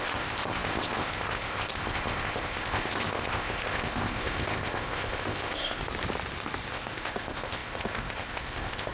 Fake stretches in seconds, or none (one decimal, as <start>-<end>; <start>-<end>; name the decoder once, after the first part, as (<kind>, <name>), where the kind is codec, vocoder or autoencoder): 0.0-5.8 (codec, ZipCodec); 6.7-8.9